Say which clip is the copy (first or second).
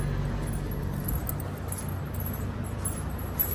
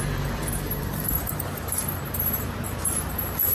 second